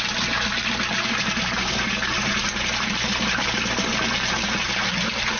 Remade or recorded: recorded